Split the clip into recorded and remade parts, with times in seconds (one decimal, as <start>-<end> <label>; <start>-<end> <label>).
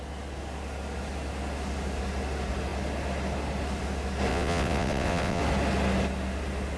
0.0-4.3 recorded; 4.3-5.4 remade; 5.4-6.8 recorded